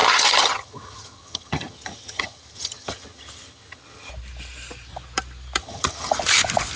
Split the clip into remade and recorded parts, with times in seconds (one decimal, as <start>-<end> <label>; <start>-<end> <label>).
0.0-4.1 remade; 4.1-5.6 recorded; 5.6-6.2 remade; 6.2-6.8 recorded